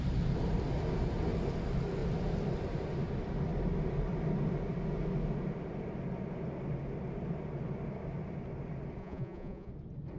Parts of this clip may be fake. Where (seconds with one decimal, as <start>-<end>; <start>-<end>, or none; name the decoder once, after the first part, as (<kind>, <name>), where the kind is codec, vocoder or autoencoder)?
9.0-9.7 (vocoder, Vocos)